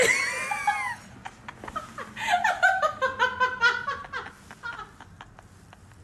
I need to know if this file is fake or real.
real